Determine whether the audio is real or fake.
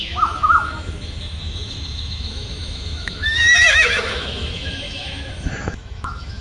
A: fake